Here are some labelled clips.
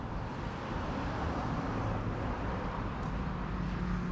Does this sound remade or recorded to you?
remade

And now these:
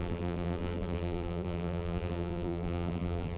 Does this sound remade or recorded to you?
remade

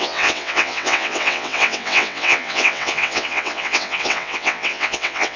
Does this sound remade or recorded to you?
remade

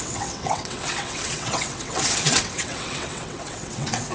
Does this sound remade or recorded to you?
remade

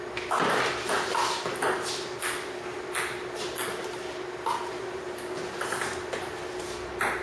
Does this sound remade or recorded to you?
recorded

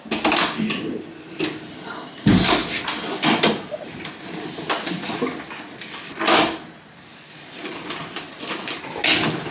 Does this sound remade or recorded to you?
recorded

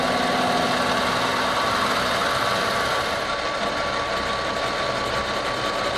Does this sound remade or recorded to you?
recorded